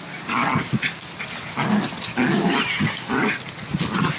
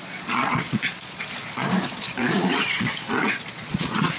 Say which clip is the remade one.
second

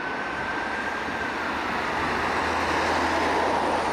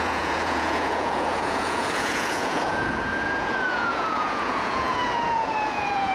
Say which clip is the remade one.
second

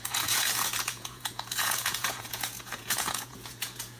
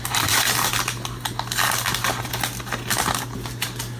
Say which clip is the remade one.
first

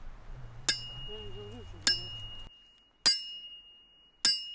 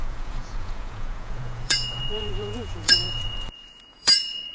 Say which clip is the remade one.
second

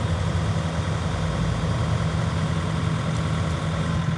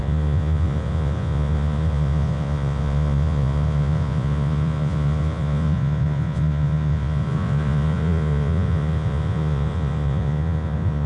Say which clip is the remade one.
second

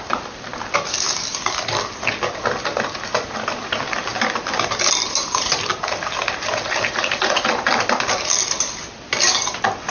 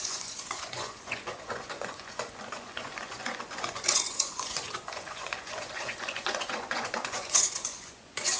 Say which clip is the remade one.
second